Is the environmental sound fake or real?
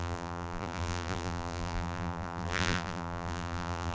fake